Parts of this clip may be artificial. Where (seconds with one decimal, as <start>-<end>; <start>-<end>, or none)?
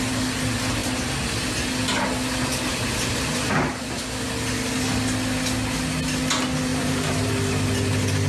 2.7-3.5; 6.7-7.3